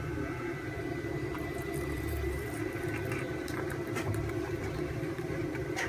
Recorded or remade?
remade